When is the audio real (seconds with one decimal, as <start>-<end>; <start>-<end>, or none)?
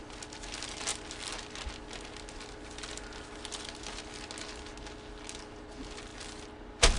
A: 0.0-7.0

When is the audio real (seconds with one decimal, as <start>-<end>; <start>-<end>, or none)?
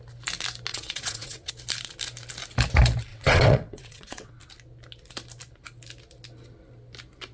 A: 0.0-0.7; 1.5-3.1; 4.4-7.3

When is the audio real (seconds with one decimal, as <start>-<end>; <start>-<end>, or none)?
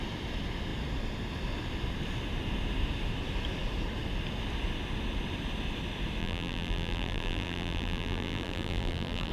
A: 0.0-6.2